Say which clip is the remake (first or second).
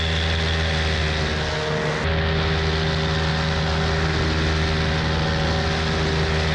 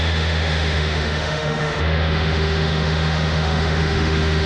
second